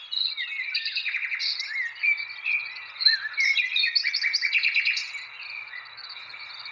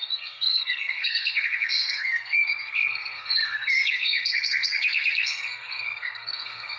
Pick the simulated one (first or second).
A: second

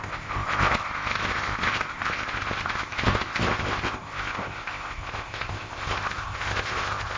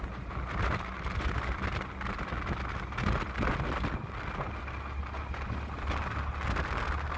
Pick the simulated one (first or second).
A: first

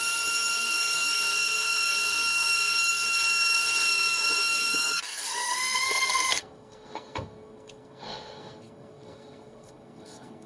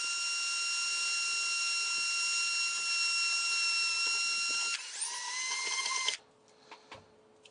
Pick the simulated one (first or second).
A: first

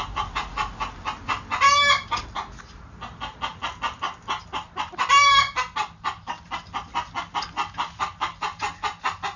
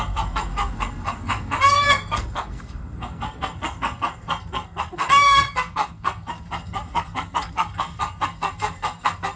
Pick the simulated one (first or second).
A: second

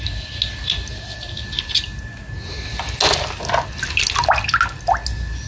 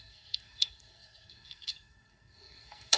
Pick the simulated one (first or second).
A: second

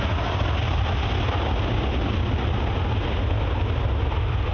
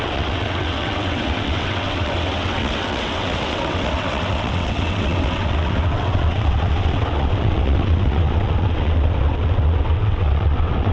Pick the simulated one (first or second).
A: second